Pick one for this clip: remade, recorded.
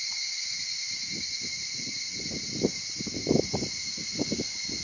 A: recorded